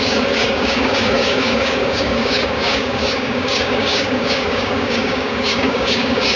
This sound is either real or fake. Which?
fake